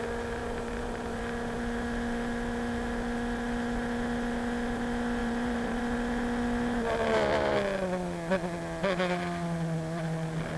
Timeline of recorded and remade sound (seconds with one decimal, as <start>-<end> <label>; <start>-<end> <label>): 0.0-0.4 recorded; 0.4-1.2 remade; 1.2-5.2 recorded; 5.2-5.8 remade; 5.8-10.6 recorded